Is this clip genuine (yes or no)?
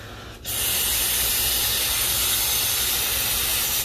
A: yes